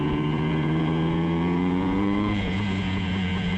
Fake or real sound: fake